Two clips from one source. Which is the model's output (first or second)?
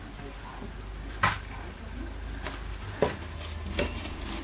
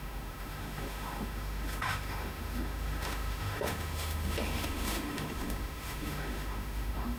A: second